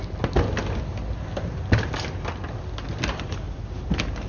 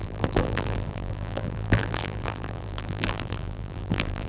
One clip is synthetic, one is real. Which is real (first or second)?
first